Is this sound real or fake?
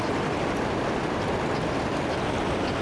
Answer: real